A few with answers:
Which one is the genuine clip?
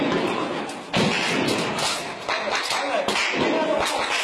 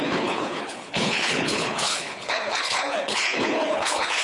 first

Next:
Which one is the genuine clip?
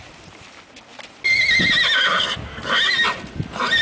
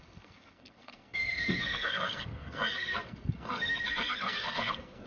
first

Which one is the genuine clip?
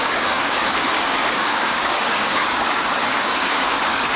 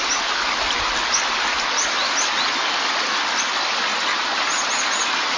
second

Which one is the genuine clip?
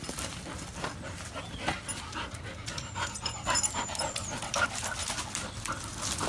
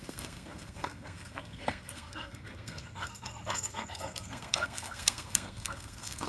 first